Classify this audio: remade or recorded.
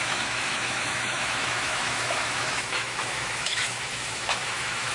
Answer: remade